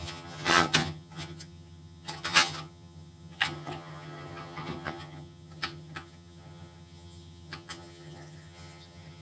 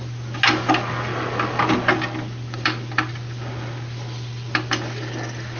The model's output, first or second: first